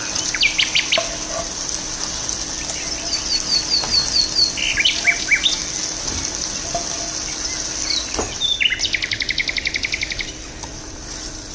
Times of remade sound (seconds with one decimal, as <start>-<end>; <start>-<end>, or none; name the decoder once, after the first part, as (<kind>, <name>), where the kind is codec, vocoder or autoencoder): none